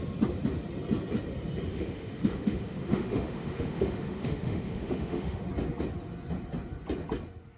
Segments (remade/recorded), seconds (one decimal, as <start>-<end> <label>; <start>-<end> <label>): 0.0-1.7 recorded; 1.7-5.4 remade; 5.4-7.6 recorded